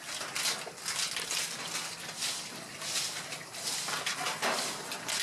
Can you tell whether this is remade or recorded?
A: recorded